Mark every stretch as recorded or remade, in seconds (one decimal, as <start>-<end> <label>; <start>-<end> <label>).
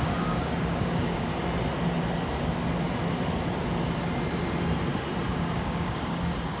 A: 0.0-1.3 remade; 1.3-5.3 recorded; 5.3-6.6 remade